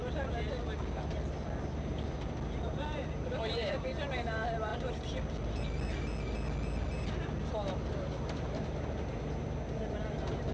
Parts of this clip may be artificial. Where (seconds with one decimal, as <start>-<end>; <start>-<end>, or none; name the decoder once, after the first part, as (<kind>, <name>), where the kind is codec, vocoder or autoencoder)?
none